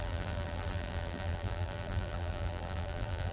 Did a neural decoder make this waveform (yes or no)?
yes